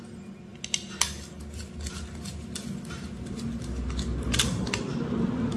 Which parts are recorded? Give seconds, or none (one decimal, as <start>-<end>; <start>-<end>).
0.0-5.6